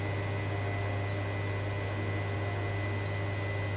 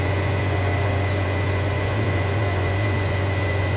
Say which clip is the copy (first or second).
second